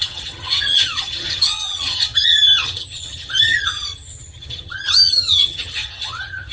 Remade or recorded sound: remade